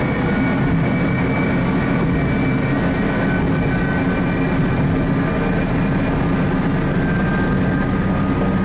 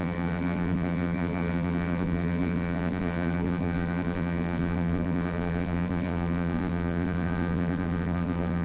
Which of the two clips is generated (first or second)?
second